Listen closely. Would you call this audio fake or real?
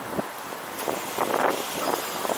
real